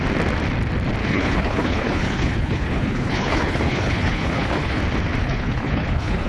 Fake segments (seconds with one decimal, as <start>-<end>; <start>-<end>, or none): 1.0-4.8; 5.2-6.3